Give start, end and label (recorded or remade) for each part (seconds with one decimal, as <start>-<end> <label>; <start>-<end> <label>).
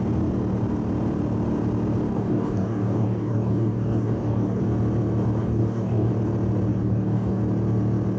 0.0-2.1 recorded; 2.1-4.6 remade; 4.6-5.4 recorded; 5.4-6.1 remade; 6.1-6.7 recorded; 6.7-7.4 remade; 7.4-8.2 recorded